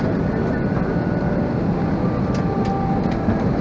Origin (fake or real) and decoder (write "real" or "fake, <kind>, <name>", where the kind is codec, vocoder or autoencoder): real